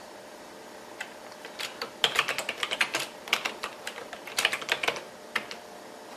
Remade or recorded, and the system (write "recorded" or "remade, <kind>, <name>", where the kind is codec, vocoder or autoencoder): recorded